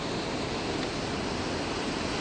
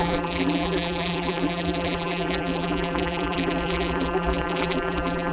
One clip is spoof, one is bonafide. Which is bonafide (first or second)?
first